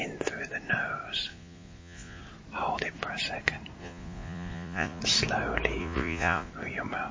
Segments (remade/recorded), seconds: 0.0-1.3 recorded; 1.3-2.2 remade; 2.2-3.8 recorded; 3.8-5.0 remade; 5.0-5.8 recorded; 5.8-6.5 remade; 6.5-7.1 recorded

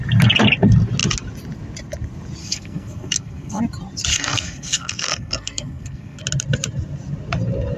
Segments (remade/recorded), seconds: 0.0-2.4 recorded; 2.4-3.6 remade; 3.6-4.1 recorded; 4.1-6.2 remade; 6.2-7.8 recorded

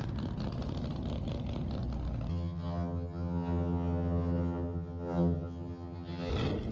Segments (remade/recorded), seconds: 0.0-2.3 recorded; 2.3-6.3 remade; 6.3-6.7 recorded